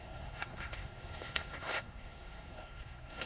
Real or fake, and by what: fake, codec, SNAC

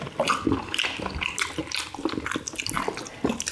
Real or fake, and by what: real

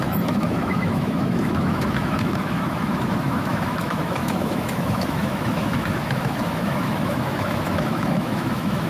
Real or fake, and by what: fake, autoencoder, DAC-VAE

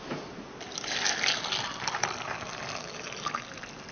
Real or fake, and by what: real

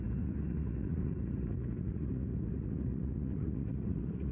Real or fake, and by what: fake, vocoder, Vocos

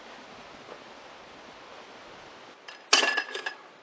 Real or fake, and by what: real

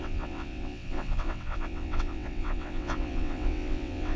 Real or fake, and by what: fake, vocoder, WaveNeXt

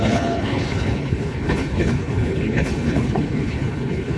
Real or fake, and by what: fake, codec, HILCodec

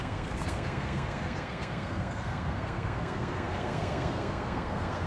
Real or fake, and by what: fake, codec, SNAC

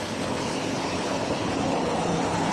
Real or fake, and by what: fake, codec, HILCodec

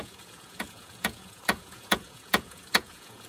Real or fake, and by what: fake, vocoder, Vocos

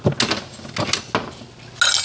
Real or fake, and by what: real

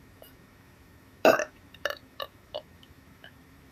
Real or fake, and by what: fake, autoencoder, DAC-VAE